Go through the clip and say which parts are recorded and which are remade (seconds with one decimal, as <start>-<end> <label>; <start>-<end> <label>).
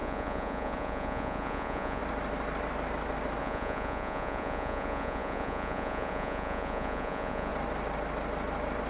0.0-2.0 remade; 2.0-3.4 recorded; 3.4-7.5 remade; 7.5-8.9 recorded